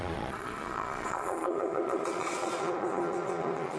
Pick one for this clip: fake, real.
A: fake